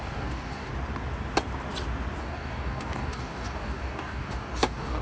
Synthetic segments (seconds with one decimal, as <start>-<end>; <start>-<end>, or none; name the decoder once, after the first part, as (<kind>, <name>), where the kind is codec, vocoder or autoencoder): 0.0-0.7 (codec, DAC); 2.2-5.0